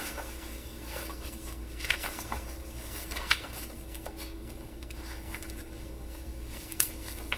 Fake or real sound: fake